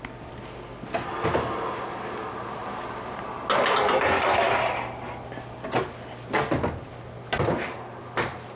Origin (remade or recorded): recorded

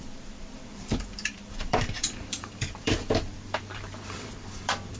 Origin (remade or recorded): remade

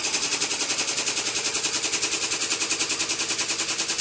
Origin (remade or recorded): recorded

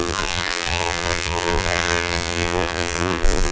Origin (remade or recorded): remade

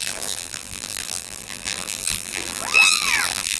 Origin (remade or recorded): remade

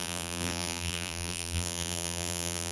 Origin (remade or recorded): remade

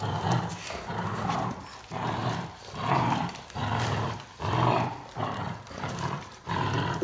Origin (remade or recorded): remade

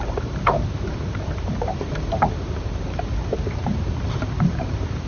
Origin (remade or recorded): remade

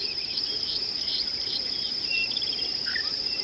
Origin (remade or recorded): remade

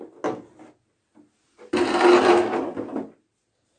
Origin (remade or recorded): recorded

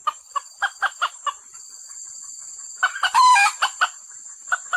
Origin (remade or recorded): remade